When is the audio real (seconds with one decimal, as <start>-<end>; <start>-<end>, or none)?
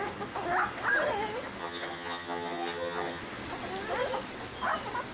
0.0-1.6; 3.2-5.1